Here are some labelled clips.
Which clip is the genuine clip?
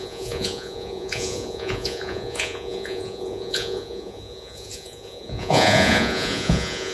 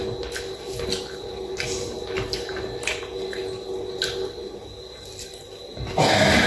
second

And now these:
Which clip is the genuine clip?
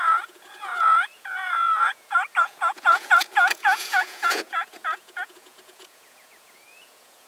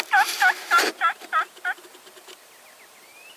second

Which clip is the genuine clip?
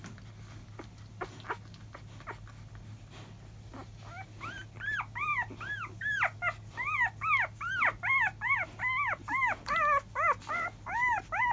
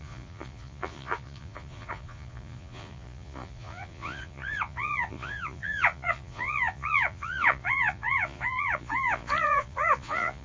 first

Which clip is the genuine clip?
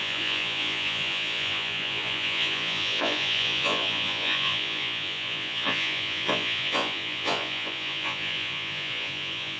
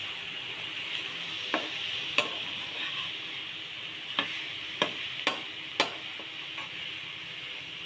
second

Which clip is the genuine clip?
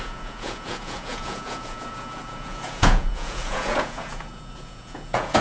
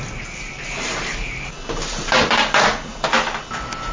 second